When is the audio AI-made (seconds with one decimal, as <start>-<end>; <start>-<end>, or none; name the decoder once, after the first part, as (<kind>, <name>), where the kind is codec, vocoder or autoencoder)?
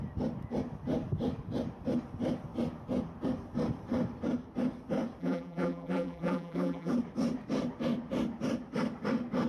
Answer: 5.2-6.9 (vocoder, BigVGAN v2)